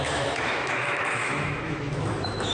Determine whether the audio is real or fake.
fake